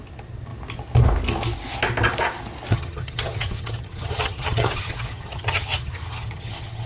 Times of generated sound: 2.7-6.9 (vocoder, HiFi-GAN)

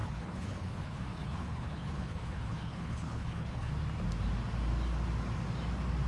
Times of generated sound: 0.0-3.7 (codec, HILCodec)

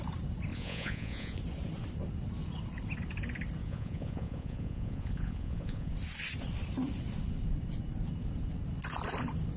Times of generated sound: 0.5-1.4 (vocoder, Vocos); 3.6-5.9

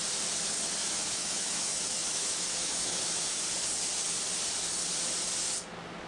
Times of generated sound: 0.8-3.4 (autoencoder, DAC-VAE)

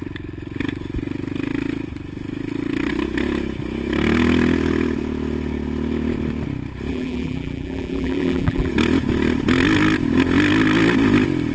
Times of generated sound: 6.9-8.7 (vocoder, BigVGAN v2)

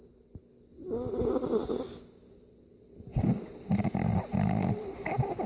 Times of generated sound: none